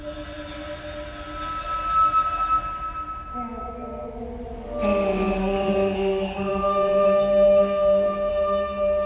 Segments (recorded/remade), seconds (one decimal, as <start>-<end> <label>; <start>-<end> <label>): 0.0-5.4 recorded; 5.4-8.3 remade; 8.3-9.1 recorded